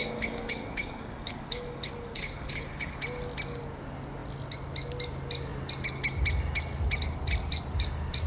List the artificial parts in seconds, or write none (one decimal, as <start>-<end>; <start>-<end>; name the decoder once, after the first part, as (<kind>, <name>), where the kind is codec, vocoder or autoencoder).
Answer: 0.0-2.9 (codec, DAC)